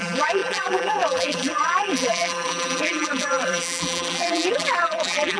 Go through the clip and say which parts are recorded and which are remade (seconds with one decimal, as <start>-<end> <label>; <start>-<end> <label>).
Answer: 0.0-5.4 remade